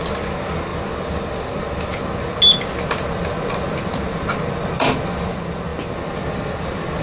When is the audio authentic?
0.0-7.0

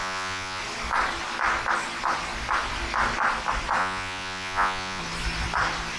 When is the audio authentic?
0.6-3.8; 5.0-6.0

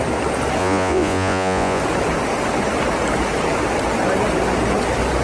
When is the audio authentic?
0.0-0.6; 1.8-5.2

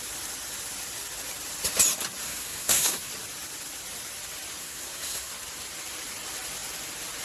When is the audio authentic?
0.0-2.3; 3.1-4.6; 5.3-7.2

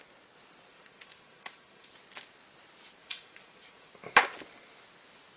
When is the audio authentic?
0.0-0.7; 1.9-3.0; 3.9-5.4

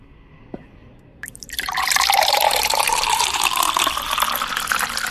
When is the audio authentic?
0.0-0.8; 3.9-5.1

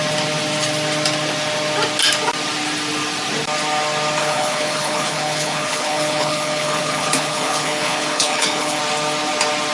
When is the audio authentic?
0.0-4.2; 8.8-9.7

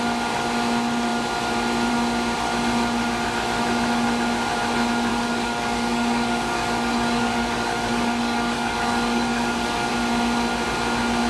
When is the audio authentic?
0.0-5.1; 9.9-11.3